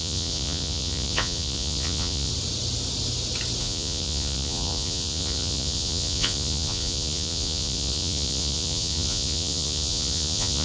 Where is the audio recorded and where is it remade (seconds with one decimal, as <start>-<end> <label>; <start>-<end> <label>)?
0.0-2.3 remade; 2.3-3.6 recorded; 3.6-10.6 remade